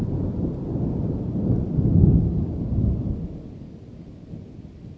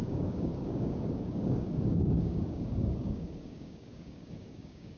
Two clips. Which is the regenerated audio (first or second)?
second